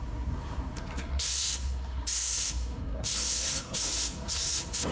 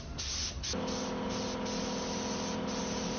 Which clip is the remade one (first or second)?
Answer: first